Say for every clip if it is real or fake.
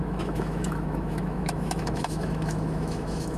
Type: fake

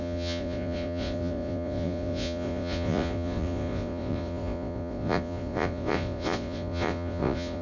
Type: fake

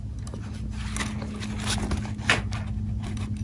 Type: real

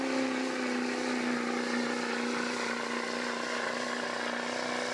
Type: real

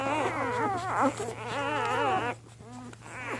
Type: real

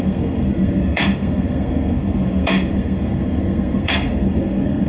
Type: fake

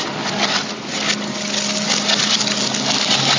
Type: real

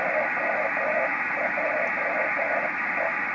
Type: real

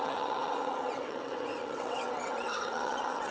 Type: fake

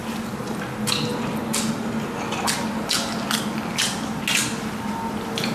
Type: real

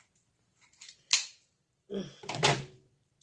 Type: fake